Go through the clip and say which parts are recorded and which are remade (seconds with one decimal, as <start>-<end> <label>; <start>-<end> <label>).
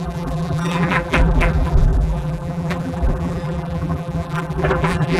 0.0-5.2 remade